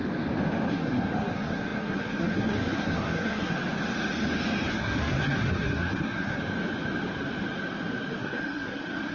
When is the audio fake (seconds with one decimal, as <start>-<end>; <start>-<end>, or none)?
0.7-3.5; 4.7-6.4; 8.2-9.1